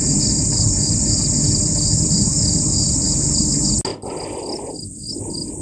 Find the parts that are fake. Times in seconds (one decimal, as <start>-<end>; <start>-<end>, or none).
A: none